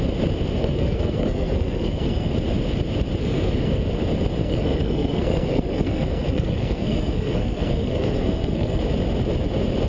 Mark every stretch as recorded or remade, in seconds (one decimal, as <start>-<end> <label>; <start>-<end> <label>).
0.0-0.6 recorded; 0.6-2.3 remade; 2.3-3.2 recorded; 3.2-3.8 remade; 3.8-4.4 recorded; 4.4-8.8 remade; 8.8-9.9 recorded